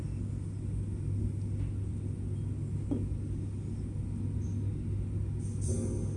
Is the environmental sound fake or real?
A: real